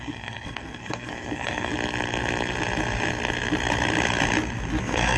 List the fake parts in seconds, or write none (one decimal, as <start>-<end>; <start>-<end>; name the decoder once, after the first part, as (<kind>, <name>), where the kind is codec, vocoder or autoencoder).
0.0-1.7 (codec, SNAC); 4.8-5.2